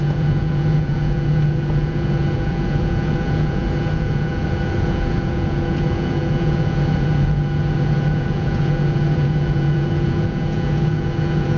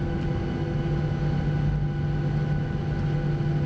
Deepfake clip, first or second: first